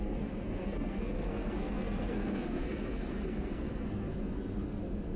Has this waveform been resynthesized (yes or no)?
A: yes